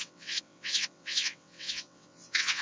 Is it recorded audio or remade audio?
remade